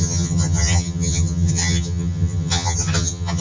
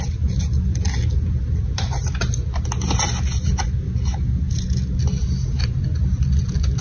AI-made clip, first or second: first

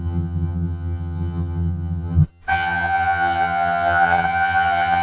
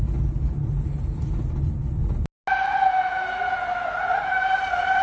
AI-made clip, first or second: first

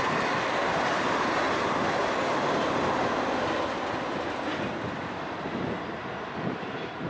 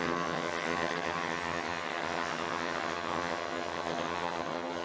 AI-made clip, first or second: second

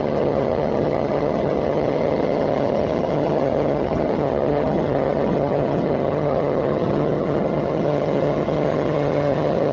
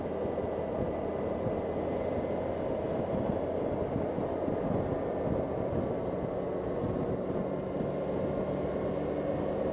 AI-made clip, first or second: first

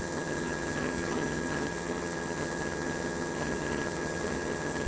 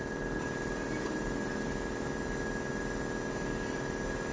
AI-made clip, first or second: first